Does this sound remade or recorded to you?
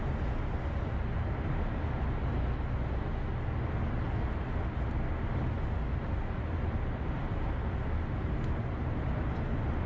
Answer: recorded